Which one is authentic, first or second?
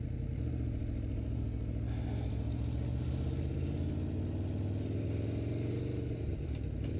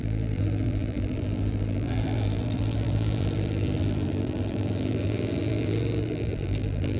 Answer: first